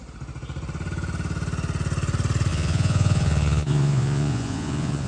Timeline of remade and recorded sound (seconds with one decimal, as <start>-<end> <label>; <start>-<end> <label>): 0.0-2.5 recorded; 2.5-5.1 remade